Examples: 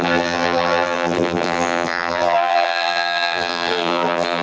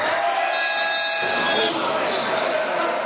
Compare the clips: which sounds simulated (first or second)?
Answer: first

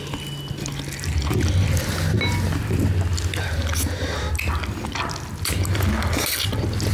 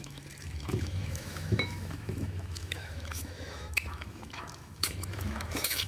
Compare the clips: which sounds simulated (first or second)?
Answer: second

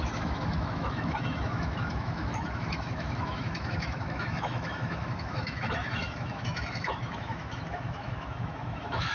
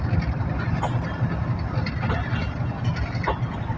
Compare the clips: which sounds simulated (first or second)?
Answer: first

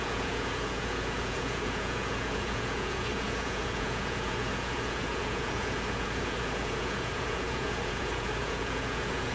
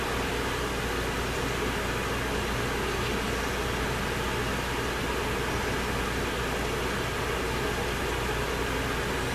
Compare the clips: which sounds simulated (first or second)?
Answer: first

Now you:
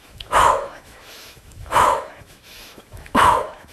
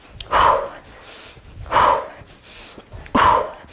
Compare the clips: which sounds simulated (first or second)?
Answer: first